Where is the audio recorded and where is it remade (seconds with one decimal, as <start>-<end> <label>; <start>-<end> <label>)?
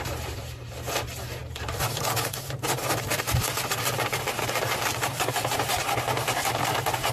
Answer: 0.0-7.1 remade